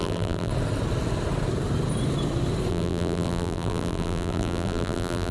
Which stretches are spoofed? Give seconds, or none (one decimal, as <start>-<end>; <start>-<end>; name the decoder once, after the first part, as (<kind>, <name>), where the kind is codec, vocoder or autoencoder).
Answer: 0.0-0.5 (vocoder, BigVGAN v2); 2.7-5.3